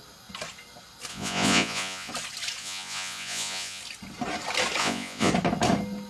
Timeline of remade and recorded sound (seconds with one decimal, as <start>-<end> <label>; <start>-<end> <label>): 0.0-1.1 recorded; 1.1-2.1 remade; 2.1-2.6 recorded; 2.6-3.8 remade; 3.8-4.8 recorded; 4.8-5.3 remade; 5.3-6.1 recorded